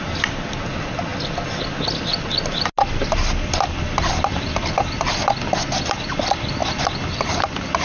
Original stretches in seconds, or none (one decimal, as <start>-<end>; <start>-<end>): 0.0-7.8